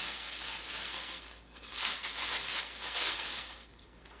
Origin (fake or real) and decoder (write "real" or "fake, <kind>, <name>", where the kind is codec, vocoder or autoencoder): fake, codec, SNAC